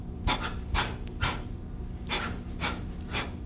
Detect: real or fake real